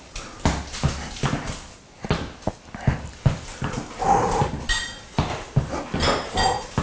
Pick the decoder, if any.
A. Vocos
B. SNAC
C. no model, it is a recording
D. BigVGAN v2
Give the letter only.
C